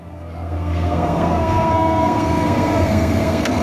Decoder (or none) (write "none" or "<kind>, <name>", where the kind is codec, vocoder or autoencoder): codec, SNAC